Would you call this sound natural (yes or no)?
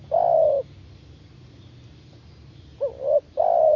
yes